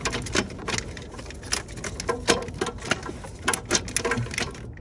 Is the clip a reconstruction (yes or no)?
no